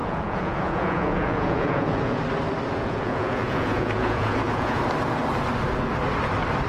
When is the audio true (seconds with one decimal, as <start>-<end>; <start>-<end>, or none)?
2.2-2.7; 4.8-6.7